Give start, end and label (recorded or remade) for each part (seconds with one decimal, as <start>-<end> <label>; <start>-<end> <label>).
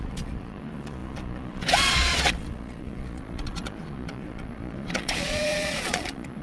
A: 0.0-6.4 remade